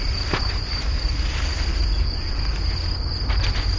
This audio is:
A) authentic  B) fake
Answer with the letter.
A